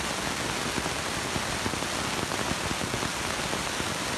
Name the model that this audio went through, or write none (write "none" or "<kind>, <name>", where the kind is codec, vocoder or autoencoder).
none